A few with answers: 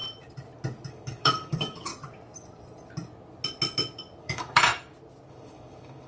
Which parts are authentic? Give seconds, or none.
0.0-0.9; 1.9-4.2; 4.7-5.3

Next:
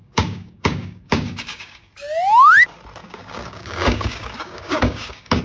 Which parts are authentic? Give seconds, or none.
1.9-3.0

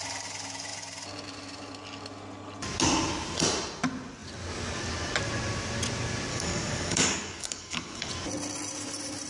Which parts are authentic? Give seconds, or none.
0.0-6.3; 8.1-9.3

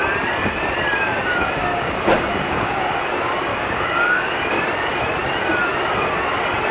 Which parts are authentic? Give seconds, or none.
0.0-1.7; 2.8-3.5; 4.4-6.7

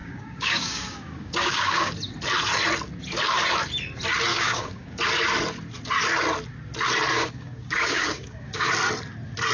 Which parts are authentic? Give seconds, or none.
1.9-4.3; 5.0-7.1; 8.7-9.5

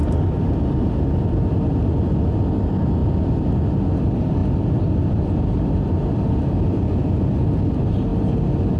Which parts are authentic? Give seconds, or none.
0.0-8.8

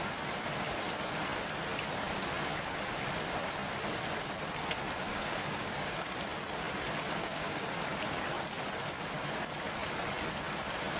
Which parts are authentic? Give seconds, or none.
0.0-5.1; 6.1-7.2; 7.7-11.0

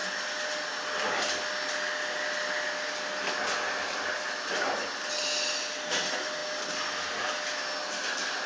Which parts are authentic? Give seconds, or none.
0.0-8.5